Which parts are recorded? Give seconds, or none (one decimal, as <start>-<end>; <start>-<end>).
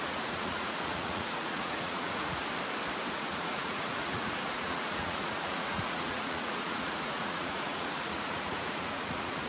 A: 2.4-3.2